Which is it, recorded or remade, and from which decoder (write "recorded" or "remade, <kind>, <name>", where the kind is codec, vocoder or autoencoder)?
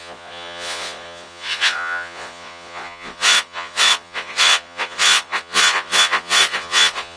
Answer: remade, vocoder, Vocos